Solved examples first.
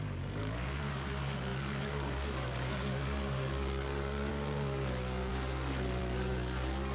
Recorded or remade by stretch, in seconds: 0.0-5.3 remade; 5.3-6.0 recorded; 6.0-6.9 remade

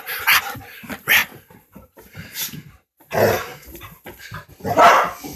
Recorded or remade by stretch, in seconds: 0.0-5.4 recorded

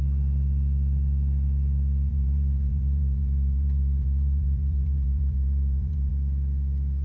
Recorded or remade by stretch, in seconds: 0.0-2.1 recorded; 2.1-6.1 remade; 6.1-7.0 recorded

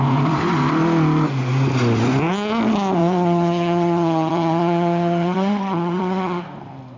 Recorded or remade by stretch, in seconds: 0.0-3.0 recorded; 3.0-6.4 remade; 6.4-7.0 recorded

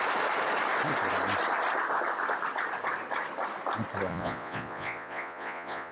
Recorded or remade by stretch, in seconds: 0.0-4.1 recorded; 4.1-5.9 remade

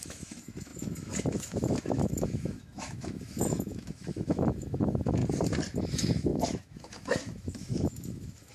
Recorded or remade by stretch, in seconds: 0.0-5.2 remade; 5.2-5.8 recorded; 5.8-8.5 remade

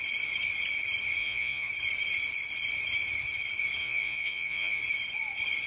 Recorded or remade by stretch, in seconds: 0.0-1.2 recorded; 1.2-1.7 remade; 1.7-3.8 recorded; 3.8-4.8 remade; 4.8-5.7 recorded